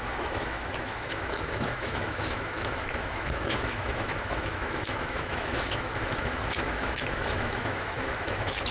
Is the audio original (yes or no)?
no